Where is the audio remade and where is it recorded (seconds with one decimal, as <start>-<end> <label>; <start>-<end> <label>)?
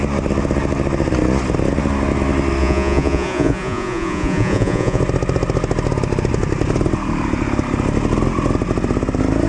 0.0-2.6 recorded; 2.6-5.0 remade; 5.0-9.5 recorded